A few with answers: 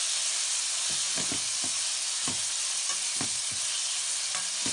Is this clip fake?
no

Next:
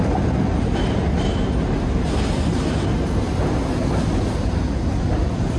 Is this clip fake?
no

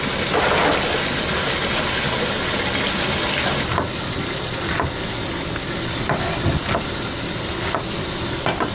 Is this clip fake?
no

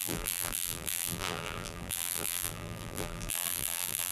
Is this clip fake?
yes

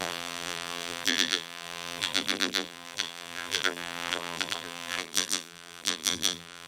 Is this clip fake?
yes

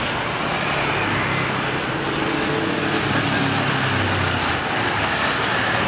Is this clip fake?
no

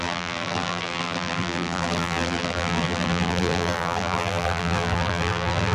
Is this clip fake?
yes